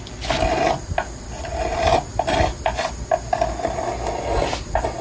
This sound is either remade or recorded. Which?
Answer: recorded